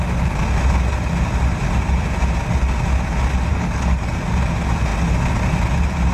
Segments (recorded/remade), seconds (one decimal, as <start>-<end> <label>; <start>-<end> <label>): 0.0-3.5 recorded; 3.5-4.1 remade; 4.1-6.1 recorded